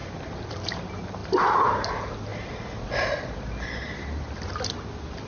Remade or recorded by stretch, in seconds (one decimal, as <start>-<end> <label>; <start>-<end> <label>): 0.0-1.2 recorded; 1.2-1.7 remade; 1.7-2.3 recorded; 2.3-2.9 remade; 2.9-5.3 recorded

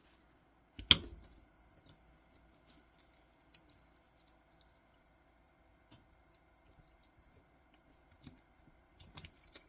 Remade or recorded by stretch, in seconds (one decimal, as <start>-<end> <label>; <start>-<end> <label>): 0.0-5.0 recorded; 5.0-9.7 remade

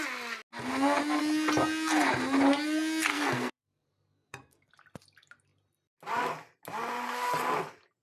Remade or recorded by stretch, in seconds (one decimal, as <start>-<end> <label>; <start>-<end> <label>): 0.0-3.1 recorded; 3.1-4.7 remade; 4.7-8.0 recorded

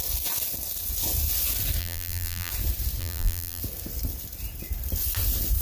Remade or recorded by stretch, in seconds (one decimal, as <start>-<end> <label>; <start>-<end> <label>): 0.0-1.8 recorded; 1.8-2.5 remade; 2.5-3.0 recorded; 3.0-3.6 remade; 3.6-5.6 recorded

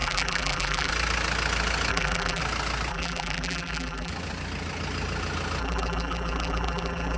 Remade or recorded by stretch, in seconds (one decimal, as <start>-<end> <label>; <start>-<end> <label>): 0.0-0.9 remade; 0.9-1.9 recorded; 1.9-2.4 remade; 2.4-2.9 recorded; 2.9-4.1 remade; 4.1-5.6 recorded; 5.6-7.2 remade

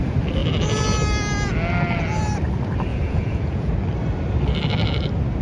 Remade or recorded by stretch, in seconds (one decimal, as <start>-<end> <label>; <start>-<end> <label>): 0.0-2.9 recorded; 2.9-3.7 remade; 3.7-5.4 recorded

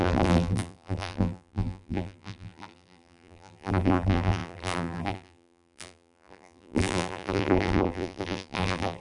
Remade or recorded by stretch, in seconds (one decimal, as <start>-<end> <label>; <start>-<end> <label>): 0.0-9.0 remade

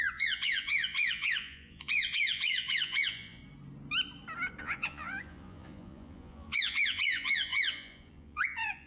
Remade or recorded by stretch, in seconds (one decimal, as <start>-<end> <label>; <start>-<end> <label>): 0.0-3.4 remade; 3.4-4.6 recorded; 4.6-8.9 remade